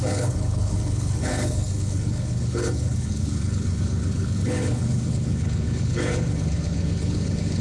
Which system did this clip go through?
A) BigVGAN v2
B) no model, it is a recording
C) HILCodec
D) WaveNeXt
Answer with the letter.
C